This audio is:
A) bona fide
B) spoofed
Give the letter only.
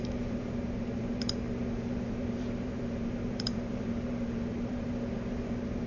B